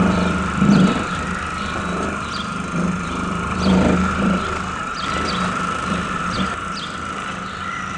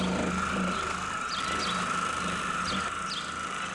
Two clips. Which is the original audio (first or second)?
second